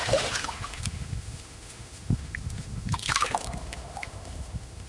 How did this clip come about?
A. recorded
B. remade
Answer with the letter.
B